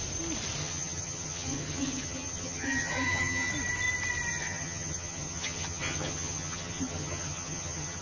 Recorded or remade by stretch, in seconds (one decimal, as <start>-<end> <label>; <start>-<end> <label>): 0.0-0.6 recorded; 0.6-3.5 remade; 3.5-4.3 recorded; 4.3-8.0 remade